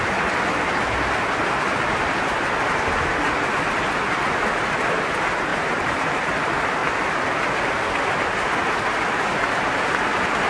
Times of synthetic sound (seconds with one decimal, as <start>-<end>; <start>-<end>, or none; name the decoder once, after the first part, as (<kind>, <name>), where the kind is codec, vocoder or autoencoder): 5.5-6.2 (vocoder, BigVGAN v2)